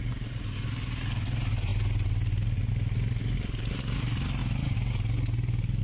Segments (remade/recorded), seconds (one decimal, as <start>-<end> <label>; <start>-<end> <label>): 0.0-5.8 recorded